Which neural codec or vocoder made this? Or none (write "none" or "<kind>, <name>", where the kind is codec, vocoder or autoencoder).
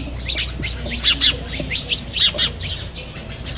none